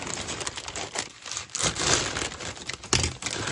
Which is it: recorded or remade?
recorded